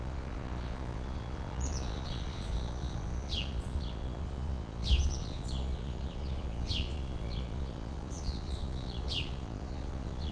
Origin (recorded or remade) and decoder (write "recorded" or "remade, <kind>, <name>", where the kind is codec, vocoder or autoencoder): remade, vocoder, Vocos